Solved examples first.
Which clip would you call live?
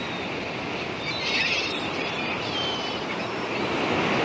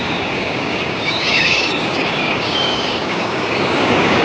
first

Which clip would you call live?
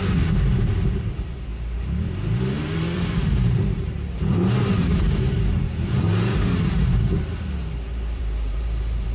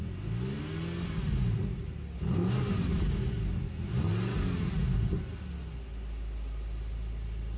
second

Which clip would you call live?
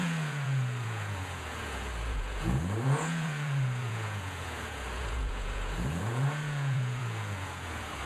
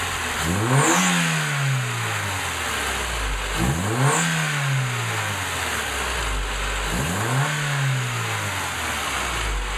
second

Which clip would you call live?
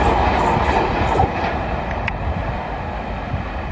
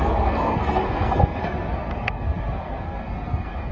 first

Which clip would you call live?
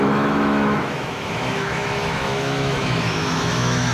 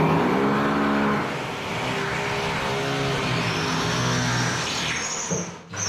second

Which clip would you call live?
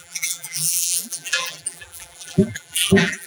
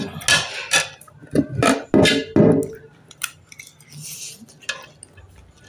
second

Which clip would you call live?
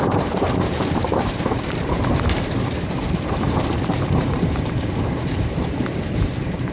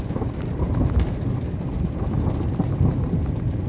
second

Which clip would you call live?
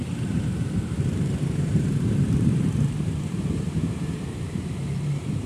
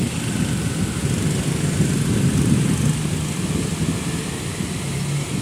second